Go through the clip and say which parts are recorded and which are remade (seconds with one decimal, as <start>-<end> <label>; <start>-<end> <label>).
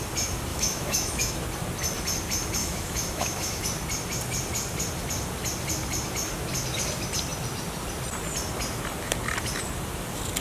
0.0-0.5 recorded; 0.5-1.3 remade; 1.3-2.6 recorded; 2.6-3.6 remade; 3.6-10.4 recorded